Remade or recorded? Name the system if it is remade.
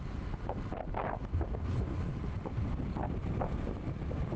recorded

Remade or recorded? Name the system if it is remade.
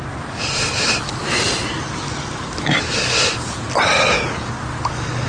recorded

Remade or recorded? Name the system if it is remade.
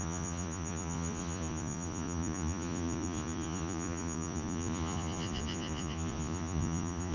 remade, vocoder, Vocos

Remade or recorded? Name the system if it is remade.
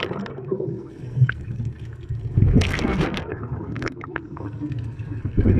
remade, codec, SNAC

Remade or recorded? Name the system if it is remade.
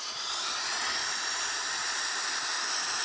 recorded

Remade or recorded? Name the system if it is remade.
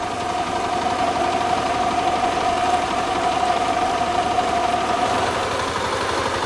recorded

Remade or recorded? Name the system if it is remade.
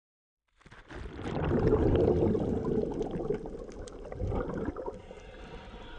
recorded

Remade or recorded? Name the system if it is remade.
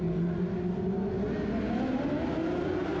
recorded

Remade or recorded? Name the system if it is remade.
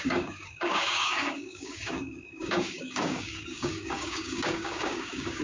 remade, codec, DAC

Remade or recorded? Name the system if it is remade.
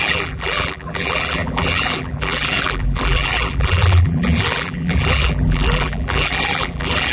remade, vocoder, BigVGAN v2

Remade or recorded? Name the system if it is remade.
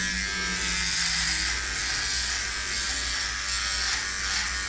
recorded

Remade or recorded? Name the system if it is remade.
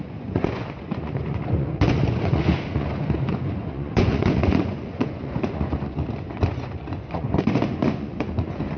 remade, vocoder, Vocos